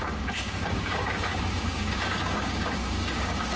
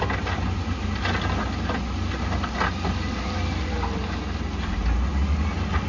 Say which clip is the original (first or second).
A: second